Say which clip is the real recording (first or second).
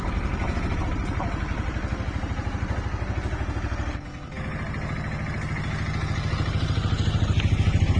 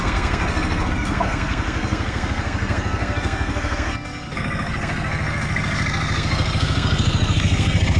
first